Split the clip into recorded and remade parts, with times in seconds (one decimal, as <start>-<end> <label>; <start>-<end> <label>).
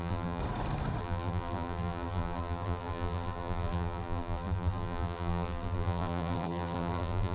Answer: 0.0-0.4 remade; 0.4-1.0 recorded; 1.0-7.3 remade